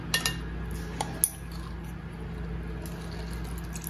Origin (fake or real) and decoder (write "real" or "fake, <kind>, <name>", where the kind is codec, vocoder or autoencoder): real